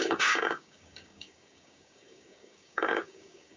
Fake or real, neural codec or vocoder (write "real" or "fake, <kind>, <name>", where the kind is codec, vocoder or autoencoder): fake, codec, DAC